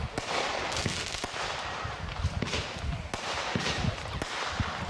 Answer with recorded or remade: recorded